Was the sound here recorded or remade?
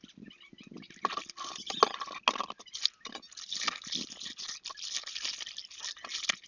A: recorded